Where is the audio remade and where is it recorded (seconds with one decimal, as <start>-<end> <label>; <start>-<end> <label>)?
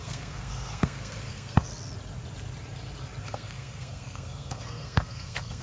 0.0-1.7 remade; 1.7-3.2 recorded; 3.2-5.6 remade